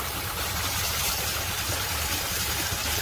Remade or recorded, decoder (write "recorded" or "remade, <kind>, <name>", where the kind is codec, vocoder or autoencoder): remade, vocoder, BigVGAN v2